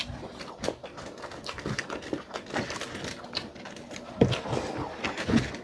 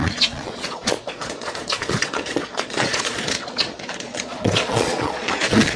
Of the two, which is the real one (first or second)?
first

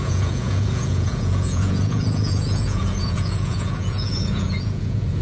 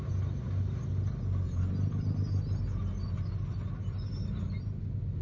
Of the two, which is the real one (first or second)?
second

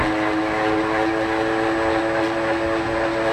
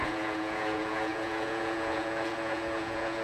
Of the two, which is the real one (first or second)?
first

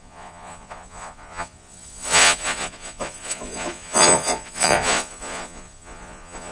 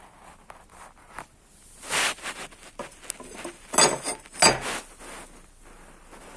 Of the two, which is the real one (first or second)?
second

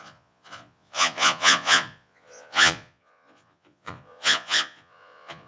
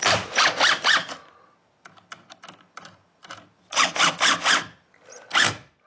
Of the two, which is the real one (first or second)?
second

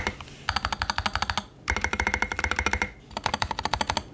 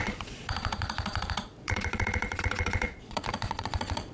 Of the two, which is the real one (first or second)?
first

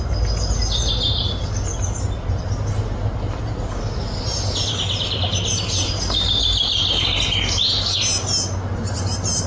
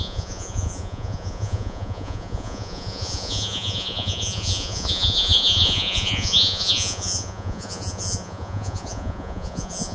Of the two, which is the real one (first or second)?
first